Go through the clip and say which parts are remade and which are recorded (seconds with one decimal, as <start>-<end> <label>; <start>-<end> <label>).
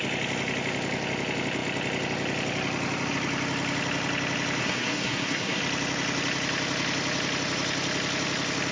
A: 0.0-4.6 recorded; 4.6-5.6 remade; 5.6-8.7 recorded